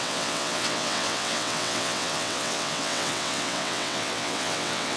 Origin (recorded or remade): remade